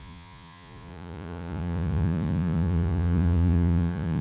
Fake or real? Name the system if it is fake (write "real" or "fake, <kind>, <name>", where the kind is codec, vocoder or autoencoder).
fake, vocoder, Vocos